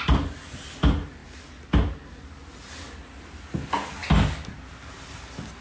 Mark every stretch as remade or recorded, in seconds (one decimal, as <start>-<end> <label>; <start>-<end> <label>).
0.0-5.6 recorded